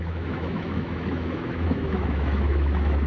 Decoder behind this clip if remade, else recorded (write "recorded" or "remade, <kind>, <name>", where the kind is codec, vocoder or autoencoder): remade, autoencoder, DAC-VAE